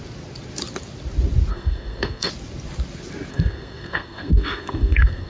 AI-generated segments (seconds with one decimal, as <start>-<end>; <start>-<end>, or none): 1.5-2.3; 3.3-5.3

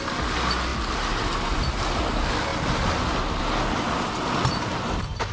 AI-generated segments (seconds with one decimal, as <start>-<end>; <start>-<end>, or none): none

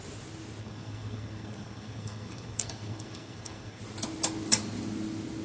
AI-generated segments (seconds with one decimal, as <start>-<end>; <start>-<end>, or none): 0.6-3.8

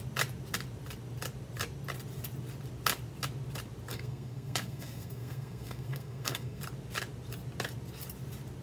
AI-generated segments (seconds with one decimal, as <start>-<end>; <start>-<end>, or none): 3.9-6.6

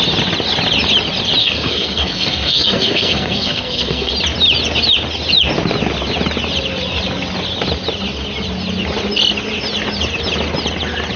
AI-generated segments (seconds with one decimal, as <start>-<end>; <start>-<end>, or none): 1.4-4.1

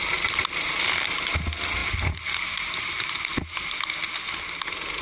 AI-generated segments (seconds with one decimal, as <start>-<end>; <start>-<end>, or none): none

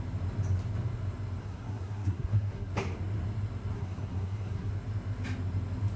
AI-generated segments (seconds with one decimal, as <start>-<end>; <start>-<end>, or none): 1.4-2.7; 3.7-4.7

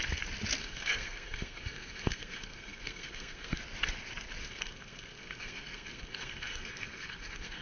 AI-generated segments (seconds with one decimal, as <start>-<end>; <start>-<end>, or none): 0.6-3.6; 4.4-7.6